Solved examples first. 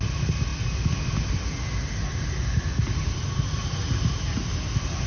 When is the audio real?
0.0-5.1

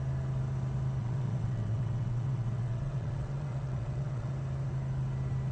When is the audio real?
0.0-1.0; 4.3-5.5

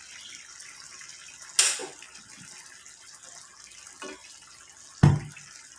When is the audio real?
0.0-5.8

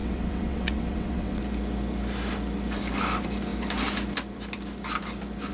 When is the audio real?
1.4-5.5

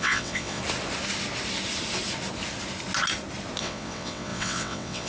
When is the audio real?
0.6-3.6

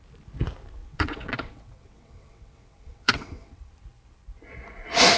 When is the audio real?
0.0-0.8; 3.7-5.2